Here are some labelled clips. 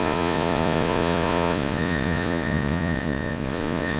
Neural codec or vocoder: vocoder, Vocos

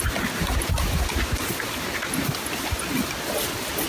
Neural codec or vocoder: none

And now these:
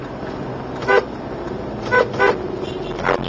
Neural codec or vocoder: none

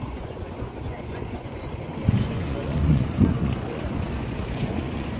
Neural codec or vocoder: vocoder, Vocos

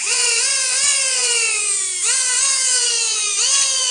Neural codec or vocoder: vocoder, Vocos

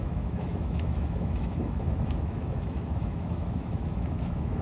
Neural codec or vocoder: autoencoder, DAC-VAE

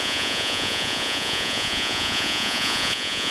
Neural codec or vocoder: vocoder, Vocos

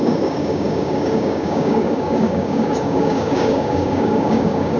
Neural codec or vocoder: codec, DAC